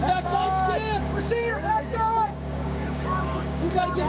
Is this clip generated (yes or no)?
yes